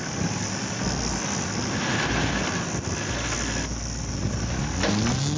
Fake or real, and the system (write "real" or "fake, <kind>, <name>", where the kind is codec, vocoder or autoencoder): real